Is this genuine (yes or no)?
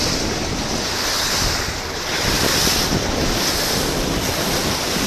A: yes